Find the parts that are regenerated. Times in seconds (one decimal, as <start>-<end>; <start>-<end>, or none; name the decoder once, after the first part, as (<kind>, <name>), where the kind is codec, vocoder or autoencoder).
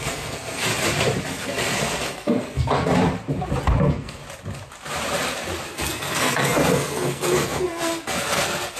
0.0-0.7 (codec, SNAC); 1.3-2.9; 3.8-4.2; 5.6-8.8